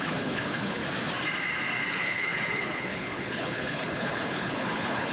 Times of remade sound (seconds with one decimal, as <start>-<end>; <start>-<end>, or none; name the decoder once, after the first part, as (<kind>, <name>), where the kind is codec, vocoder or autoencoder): 0.0-0.8 (codec, HILCodec); 1.9-5.1